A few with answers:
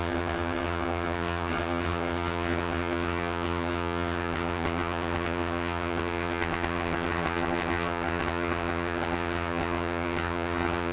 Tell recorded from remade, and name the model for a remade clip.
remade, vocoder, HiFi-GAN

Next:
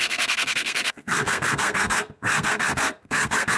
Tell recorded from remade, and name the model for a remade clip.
remade, codec, SNAC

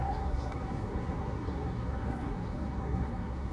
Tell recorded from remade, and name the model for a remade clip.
remade, codec, SNAC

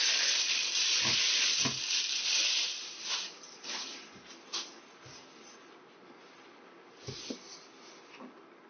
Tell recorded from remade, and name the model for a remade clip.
recorded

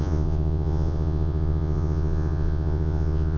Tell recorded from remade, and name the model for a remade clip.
remade, vocoder, Vocos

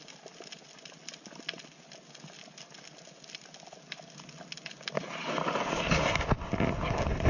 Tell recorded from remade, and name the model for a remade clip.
recorded